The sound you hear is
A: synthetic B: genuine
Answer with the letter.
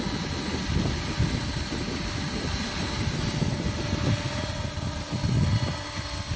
B